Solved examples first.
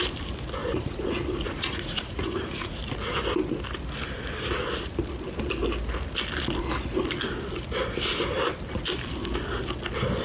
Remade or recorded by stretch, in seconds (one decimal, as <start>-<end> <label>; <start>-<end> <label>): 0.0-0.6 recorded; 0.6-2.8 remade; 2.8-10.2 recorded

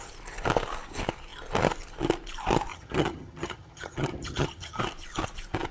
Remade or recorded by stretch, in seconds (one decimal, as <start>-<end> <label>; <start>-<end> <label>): 0.0-2.7 recorded; 2.7-4.8 remade; 4.8-5.7 recorded

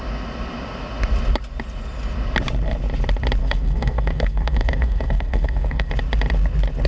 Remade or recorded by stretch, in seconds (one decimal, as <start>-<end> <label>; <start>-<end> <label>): 0.0-3.4 recorded; 3.4-5.9 remade; 5.9-6.9 recorded